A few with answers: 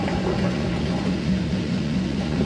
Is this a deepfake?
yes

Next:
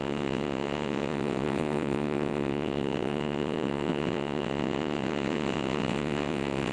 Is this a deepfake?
yes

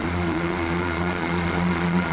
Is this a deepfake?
yes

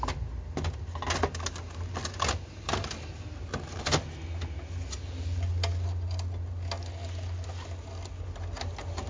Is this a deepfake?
no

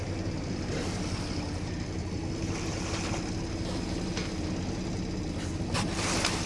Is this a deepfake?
no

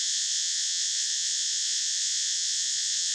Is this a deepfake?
yes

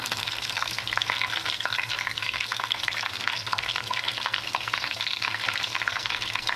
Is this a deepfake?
yes